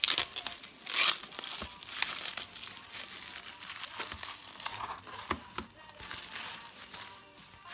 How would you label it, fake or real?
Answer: real